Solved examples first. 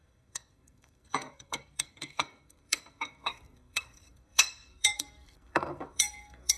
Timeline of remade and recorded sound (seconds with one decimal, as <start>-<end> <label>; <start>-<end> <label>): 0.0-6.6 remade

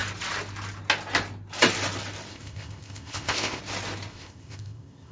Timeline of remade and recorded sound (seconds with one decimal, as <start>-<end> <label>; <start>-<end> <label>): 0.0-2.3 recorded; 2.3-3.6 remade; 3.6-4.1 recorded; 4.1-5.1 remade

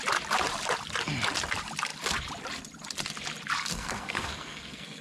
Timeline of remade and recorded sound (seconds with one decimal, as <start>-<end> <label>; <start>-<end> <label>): 0.0-3.6 recorded; 3.6-5.0 remade

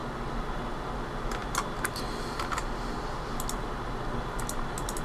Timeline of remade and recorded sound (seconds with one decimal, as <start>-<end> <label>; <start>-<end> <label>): 0.0-5.0 recorded

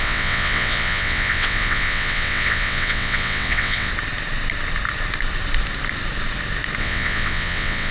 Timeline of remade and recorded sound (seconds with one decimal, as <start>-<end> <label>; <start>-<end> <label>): 0.0-3.9 remade; 3.9-6.8 recorded; 6.8-7.9 remade